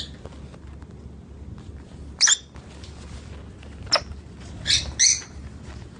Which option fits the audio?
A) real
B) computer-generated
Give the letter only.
A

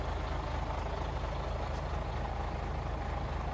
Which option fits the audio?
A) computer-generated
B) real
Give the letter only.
B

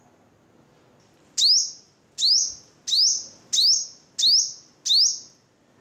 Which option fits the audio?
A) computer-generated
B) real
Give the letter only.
B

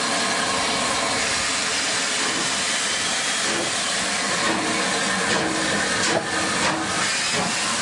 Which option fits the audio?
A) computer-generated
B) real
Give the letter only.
B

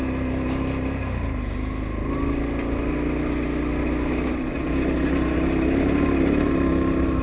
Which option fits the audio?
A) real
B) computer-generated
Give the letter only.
A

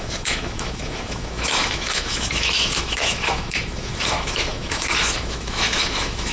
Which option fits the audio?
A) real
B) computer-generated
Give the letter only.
B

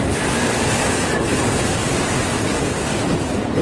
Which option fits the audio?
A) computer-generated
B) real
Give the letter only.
B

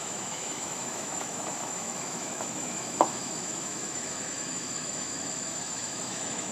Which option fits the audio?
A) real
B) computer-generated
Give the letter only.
B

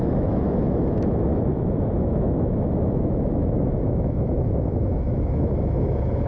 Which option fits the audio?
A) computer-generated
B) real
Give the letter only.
A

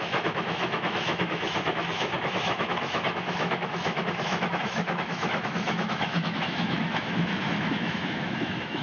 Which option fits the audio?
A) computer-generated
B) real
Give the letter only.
A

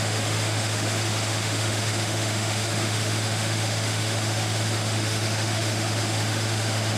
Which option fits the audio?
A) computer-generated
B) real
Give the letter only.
A